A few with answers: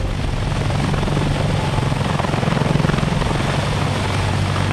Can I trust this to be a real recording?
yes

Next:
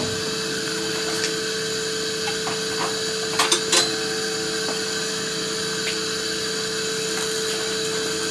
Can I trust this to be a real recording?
yes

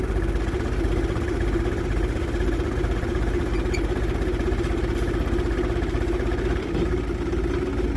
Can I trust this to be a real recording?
yes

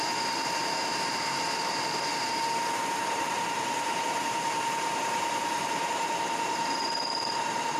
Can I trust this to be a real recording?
no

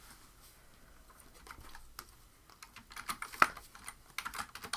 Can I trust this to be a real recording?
yes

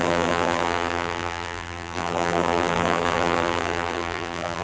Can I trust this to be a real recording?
no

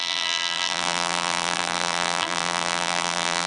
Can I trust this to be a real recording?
no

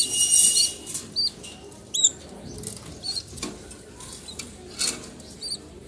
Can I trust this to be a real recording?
yes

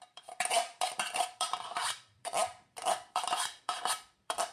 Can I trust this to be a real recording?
no